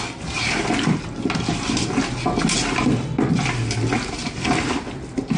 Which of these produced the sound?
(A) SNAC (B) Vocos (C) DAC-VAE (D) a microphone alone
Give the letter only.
D